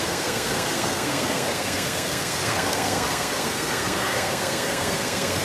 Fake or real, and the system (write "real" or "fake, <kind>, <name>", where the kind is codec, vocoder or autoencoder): fake, codec, SNAC